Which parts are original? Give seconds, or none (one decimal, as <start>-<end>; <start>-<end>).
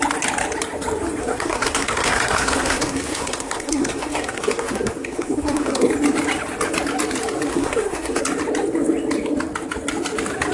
0.0-1.2; 5.9-7.5; 8.2-10.5